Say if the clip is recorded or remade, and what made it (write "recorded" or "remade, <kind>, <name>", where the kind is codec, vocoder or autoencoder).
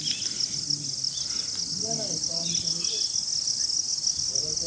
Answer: recorded